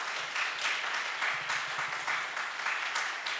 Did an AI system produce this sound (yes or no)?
no